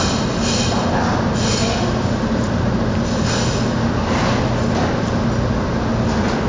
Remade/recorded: recorded